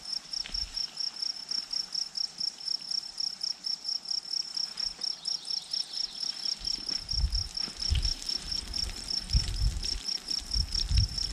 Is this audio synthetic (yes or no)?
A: no